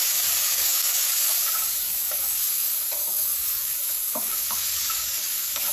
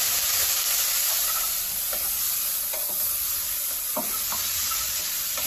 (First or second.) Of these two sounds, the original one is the second